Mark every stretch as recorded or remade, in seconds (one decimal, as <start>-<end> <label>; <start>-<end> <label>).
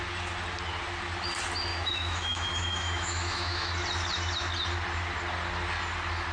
0.0-1.7 recorded; 1.7-3.7 remade; 3.7-6.3 recorded